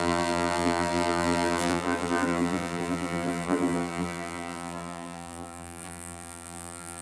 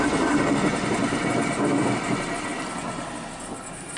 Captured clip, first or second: second